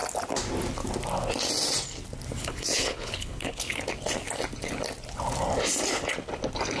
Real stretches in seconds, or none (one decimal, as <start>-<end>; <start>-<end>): 0.0-2.4; 3.8-6.8